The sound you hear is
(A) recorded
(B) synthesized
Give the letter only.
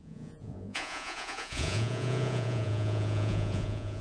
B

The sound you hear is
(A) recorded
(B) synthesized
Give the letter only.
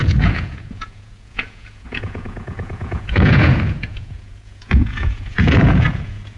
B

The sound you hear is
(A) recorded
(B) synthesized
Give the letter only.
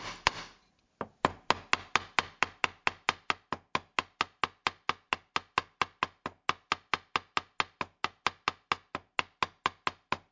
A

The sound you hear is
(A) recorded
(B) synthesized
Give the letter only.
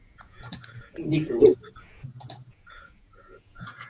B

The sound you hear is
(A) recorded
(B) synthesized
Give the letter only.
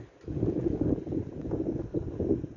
A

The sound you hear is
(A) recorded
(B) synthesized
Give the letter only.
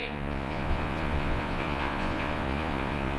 B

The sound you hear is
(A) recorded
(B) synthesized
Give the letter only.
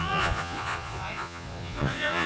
B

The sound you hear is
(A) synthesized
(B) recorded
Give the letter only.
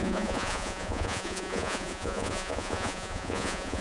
A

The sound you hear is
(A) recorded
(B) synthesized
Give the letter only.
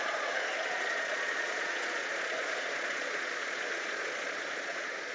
B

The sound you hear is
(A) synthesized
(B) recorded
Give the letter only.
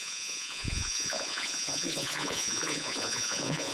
A